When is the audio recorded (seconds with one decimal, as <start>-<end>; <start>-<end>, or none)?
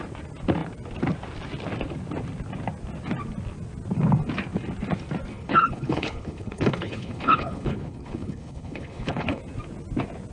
0.0-5.3; 9.4-10.3